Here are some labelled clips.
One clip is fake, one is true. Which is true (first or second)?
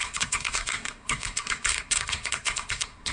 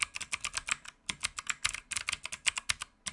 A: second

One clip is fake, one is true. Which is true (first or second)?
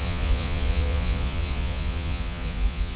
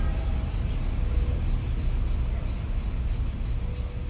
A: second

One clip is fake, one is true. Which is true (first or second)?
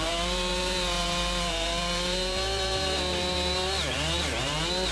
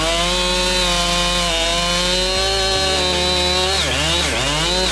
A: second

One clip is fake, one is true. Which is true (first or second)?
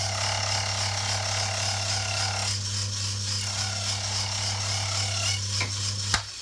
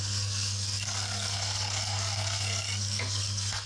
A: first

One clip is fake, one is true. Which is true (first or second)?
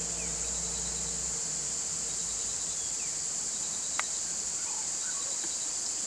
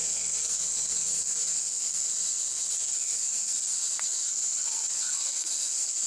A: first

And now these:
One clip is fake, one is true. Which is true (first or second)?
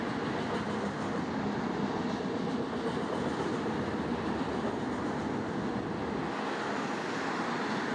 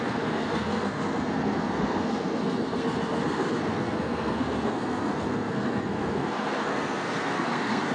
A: first